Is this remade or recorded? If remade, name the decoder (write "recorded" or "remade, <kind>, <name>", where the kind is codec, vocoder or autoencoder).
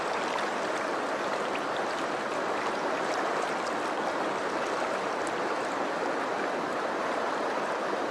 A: recorded